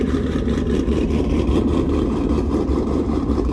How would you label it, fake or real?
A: fake